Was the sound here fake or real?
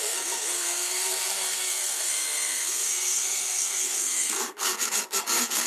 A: fake